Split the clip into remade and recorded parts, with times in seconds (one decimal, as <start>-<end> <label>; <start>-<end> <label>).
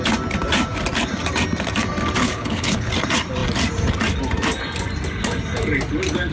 0.0-2.2 recorded; 2.2-2.9 remade; 2.9-6.3 recorded